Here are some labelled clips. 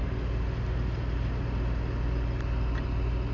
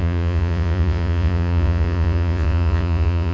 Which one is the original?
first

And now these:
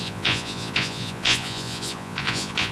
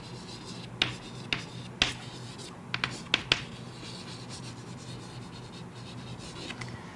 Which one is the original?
second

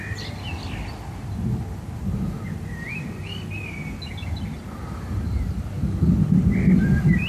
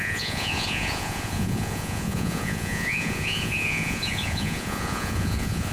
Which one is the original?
first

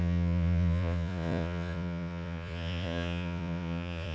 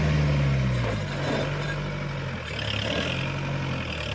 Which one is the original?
second